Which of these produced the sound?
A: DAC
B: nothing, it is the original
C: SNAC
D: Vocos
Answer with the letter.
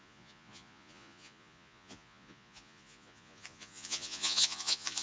D